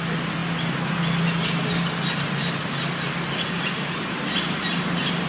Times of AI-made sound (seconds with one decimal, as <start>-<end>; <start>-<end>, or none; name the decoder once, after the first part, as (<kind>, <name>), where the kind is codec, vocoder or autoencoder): none